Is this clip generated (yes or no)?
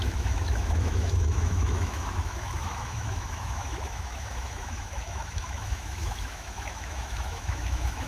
yes